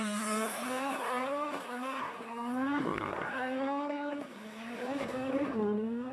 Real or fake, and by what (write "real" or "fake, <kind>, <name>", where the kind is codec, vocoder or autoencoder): fake, codec, SNAC